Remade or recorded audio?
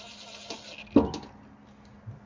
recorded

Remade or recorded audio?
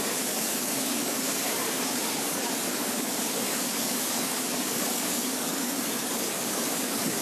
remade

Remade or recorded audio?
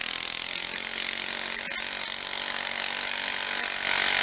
recorded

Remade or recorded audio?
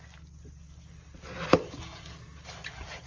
recorded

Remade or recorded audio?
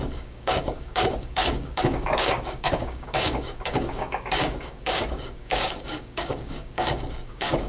remade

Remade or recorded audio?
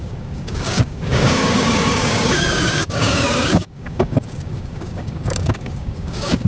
remade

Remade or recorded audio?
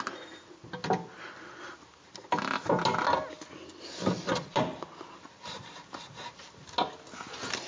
recorded